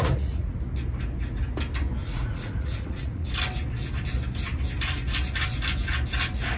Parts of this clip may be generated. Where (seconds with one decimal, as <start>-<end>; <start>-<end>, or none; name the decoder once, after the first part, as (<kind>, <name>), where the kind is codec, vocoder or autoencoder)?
0.0-0.6 (vocoder, Vocos); 2.0-3.3